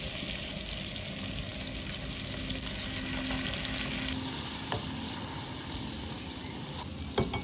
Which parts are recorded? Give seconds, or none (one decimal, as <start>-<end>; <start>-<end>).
0.0-7.4